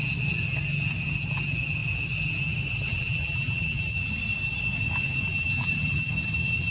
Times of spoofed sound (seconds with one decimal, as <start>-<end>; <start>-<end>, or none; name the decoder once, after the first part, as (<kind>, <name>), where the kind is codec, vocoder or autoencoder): 2.9-4.1 (vocoder, BigVGAN v2); 5.3-6.1